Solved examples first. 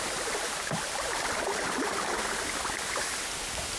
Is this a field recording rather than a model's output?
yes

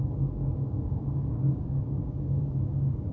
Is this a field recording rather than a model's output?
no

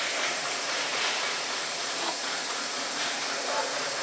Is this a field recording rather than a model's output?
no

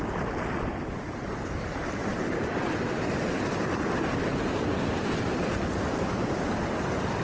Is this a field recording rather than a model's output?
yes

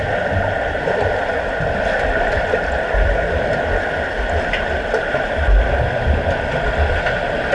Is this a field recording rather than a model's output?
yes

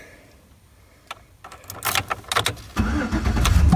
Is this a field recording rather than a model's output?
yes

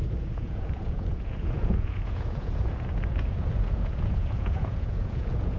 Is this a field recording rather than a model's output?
no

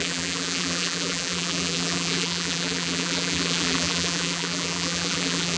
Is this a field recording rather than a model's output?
no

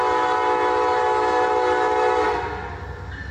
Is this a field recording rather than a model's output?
yes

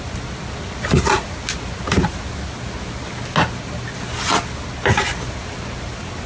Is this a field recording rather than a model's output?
yes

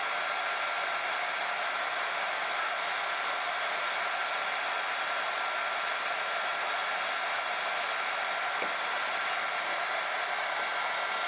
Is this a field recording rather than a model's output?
yes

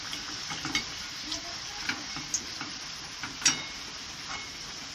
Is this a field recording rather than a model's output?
yes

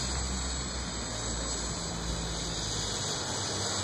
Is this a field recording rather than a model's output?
yes